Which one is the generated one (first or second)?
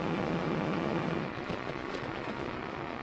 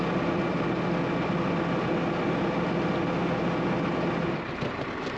first